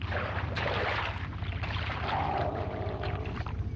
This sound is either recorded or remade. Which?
recorded